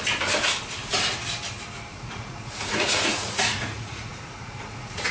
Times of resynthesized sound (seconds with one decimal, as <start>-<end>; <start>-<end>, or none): 1.9-5.1